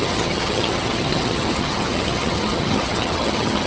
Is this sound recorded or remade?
remade